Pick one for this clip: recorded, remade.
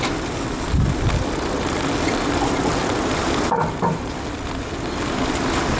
recorded